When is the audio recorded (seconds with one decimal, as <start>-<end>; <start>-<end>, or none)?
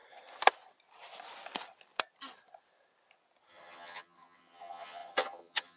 0.0-3.5